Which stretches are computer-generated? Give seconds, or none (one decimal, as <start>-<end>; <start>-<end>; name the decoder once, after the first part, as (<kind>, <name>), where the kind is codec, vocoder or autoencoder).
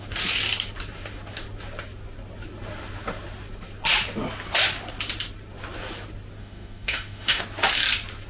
6.4-7.4 (autoencoder, DAC-VAE)